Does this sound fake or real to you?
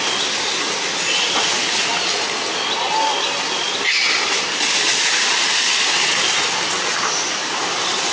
real